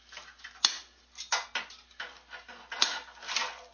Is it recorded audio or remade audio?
recorded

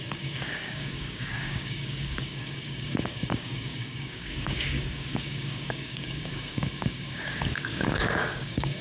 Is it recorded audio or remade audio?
remade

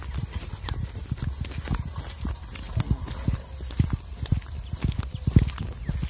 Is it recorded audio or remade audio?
recorded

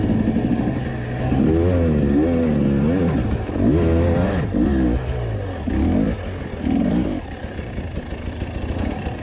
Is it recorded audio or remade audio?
recorded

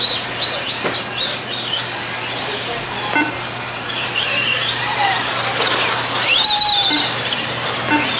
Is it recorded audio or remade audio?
recorded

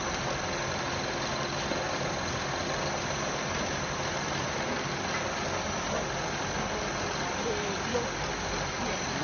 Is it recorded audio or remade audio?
recorded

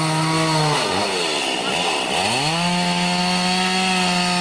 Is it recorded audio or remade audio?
recorded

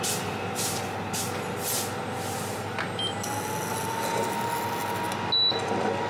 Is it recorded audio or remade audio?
recorded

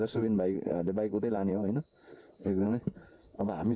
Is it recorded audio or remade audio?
recorded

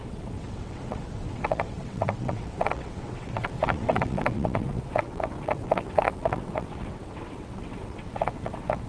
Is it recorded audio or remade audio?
remade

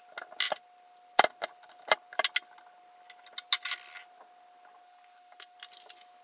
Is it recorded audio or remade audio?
recorded